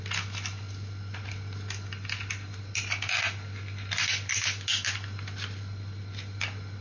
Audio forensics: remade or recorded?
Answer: recorded